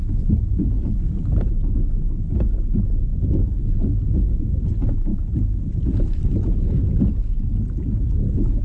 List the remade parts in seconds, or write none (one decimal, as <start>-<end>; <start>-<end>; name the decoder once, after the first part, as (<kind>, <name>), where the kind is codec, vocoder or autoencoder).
5.1-6.7 (vocoder, BigVGAN v2)